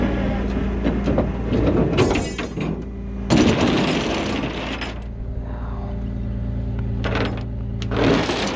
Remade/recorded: recorded